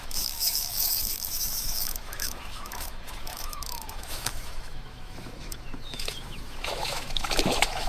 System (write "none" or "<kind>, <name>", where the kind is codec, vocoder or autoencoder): autoencoder, DAC-VAE